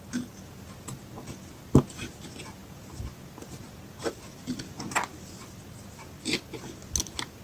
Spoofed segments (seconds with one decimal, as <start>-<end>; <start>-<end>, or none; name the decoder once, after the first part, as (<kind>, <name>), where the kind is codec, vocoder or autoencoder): none